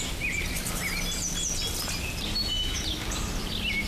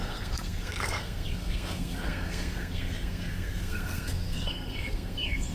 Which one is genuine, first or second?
first